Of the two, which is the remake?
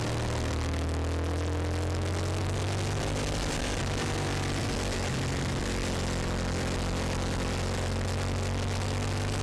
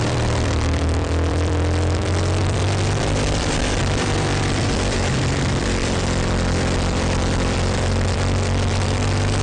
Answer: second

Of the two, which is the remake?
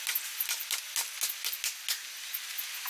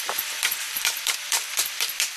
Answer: second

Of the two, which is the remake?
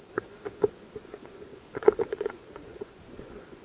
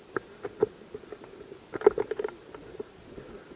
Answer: first